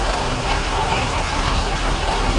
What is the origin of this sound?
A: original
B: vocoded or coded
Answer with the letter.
B